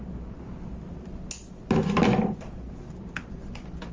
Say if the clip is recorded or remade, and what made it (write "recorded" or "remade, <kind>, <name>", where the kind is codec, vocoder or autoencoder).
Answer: recorded